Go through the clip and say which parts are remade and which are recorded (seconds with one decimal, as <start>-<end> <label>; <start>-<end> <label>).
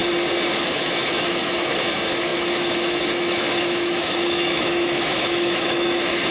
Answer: 0.0-0.5 recorded; 0.5-6.3 remade